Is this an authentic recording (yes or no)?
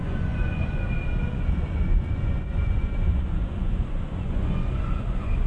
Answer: no